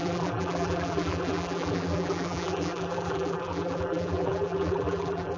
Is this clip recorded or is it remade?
remade